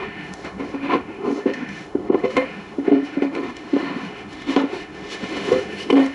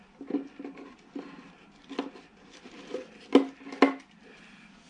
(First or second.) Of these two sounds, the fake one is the first